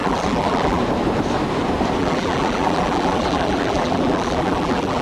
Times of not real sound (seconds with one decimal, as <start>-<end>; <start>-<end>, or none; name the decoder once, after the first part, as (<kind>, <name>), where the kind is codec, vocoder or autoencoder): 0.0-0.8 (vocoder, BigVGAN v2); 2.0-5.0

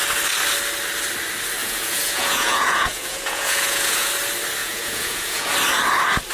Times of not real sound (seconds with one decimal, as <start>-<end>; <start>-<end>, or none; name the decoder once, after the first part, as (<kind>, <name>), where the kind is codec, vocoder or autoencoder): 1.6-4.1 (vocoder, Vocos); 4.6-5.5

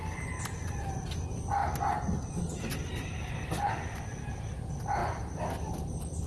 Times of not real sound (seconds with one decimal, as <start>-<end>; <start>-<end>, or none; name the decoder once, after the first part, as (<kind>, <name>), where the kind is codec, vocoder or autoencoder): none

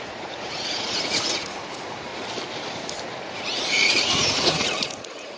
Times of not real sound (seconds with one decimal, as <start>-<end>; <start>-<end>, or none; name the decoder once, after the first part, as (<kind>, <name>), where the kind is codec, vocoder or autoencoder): 0.0-2.1 (vocoder, Vocos); 3.2-5.4

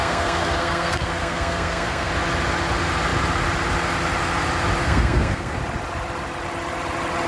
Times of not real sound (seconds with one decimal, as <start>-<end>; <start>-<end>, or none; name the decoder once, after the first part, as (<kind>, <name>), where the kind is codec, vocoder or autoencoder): 0.0-2.1 (codec, SNAC); 4.8-5.6

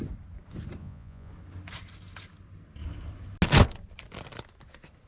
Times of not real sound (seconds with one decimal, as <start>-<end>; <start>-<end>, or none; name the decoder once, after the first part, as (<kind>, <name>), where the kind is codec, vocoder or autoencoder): 0.8-1.3 (vocoder, Vocos)